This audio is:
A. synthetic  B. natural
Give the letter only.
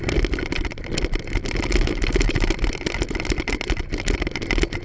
B